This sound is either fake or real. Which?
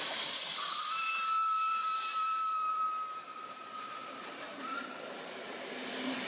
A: fake